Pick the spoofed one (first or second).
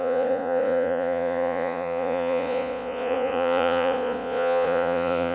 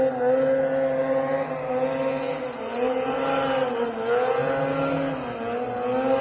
first